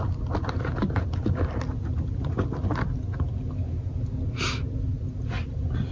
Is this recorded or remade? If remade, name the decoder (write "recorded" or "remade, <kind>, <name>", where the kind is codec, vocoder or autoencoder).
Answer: recorded